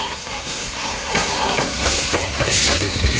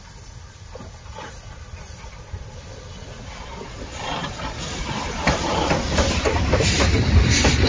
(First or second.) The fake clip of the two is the first